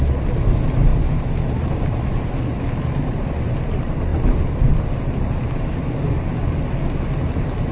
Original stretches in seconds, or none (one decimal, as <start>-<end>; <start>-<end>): 0.0-7.7